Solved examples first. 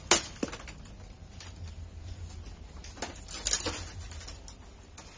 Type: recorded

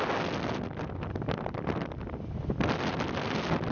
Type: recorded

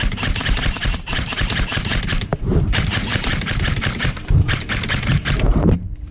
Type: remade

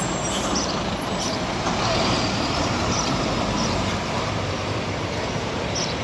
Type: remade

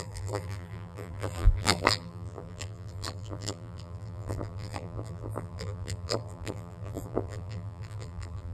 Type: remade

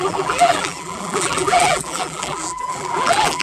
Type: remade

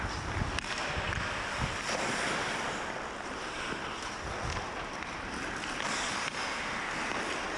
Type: remade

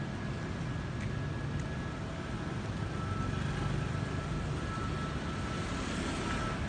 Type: recorded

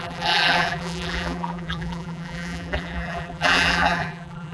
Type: remade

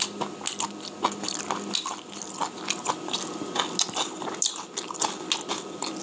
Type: recorded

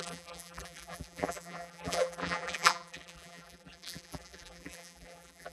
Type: remade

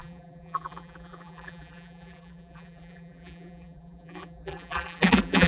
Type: remade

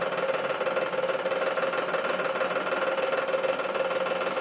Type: recorded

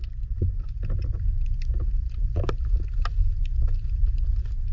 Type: recorded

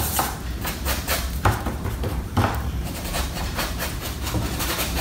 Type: remade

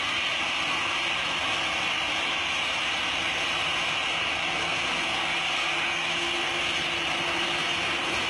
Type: recorded